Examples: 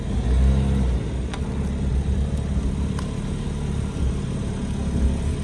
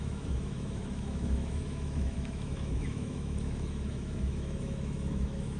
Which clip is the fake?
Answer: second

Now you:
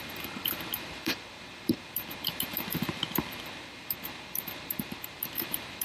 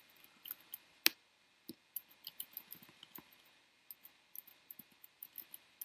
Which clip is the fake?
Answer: first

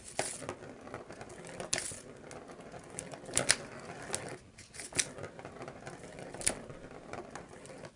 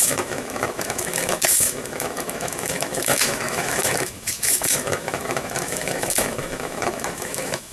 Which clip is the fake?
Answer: second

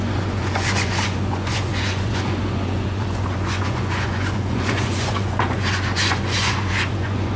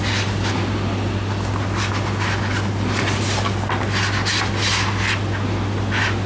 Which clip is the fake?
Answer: first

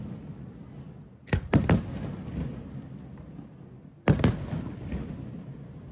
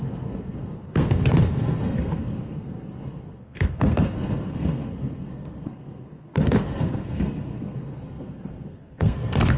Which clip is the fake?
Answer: second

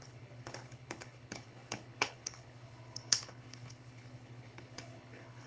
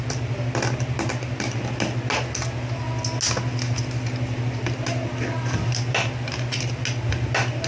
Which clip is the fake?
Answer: first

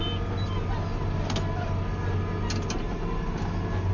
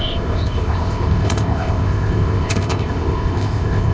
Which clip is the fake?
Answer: second